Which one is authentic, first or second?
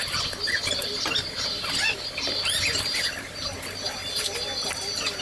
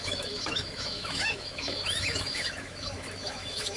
first